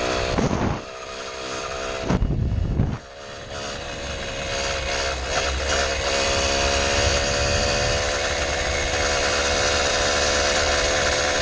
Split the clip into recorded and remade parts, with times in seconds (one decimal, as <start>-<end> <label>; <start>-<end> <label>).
0.0-11.4 recorded